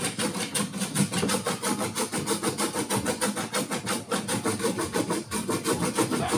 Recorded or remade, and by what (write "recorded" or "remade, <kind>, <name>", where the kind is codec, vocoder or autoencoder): recorded